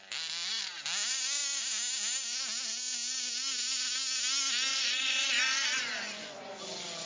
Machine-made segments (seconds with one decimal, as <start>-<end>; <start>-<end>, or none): 4.7-6.6